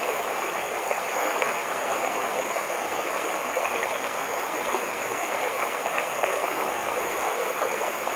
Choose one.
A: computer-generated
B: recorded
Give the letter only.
A